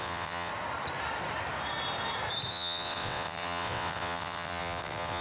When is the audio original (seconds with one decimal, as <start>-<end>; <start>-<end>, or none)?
0.5-2.5